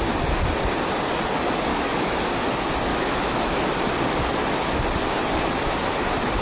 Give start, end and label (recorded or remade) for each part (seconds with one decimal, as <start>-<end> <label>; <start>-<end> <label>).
0.0-1.7 recorded; 1.7-2.3 remade; 2.3-2.9 recorded; 2.9-3.6 remade; 3.6-6.4 recorded